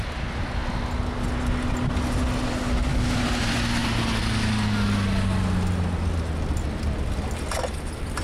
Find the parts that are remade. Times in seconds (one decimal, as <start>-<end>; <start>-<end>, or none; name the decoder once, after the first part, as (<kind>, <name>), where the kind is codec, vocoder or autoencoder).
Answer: none